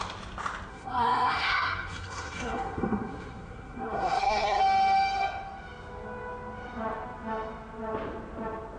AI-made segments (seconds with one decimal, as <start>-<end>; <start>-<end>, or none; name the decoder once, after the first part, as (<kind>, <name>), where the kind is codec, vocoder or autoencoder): 0.7-4.6 (codec, SNAC)